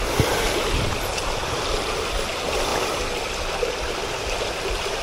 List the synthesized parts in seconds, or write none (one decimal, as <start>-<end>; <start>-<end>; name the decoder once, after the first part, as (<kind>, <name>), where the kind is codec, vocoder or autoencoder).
none